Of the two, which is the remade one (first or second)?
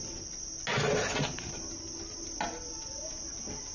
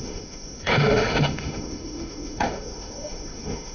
second